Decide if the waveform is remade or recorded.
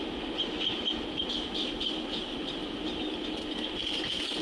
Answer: recorded